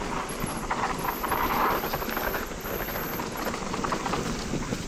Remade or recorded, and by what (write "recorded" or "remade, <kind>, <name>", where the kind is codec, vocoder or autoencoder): recorded